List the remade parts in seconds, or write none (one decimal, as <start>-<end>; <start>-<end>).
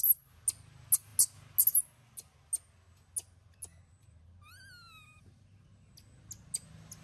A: none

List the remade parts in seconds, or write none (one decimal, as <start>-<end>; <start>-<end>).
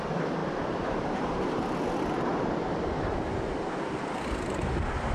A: 0.4-1.4; 2.3-2.9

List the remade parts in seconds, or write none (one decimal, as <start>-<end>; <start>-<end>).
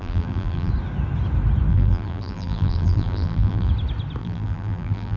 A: 0.0-0.7; 1.7-3.7; 4.2-5.2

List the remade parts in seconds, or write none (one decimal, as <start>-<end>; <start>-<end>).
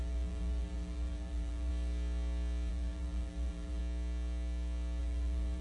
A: 0.0-1.7; 2.7-3.8; 5.0-5.6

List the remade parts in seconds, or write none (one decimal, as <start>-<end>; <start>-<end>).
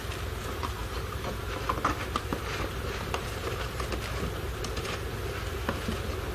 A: 0.8-1.5; 2.3-3.9